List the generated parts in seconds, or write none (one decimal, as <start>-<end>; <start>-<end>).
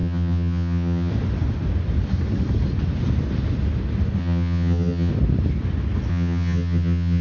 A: 0.0-1.1; 4.2-5.1; 6.1-7.2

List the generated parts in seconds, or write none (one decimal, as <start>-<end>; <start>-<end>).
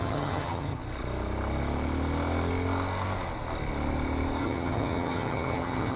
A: 0.0-0.8; 4.4-6.0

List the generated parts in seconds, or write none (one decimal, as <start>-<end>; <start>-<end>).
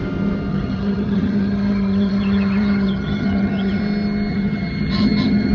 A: 0.5-3.8; 4.3-5.5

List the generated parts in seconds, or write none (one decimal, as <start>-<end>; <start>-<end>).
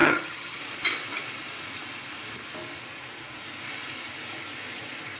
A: 0.0-0.6